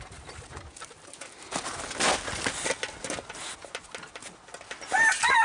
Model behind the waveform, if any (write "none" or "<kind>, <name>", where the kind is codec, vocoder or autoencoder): none